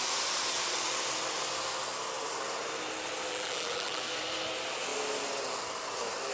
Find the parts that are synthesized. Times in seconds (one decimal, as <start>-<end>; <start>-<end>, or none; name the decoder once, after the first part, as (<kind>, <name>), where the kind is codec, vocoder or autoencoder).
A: 3.3-4.0 (vocoder, BigVGAN v2)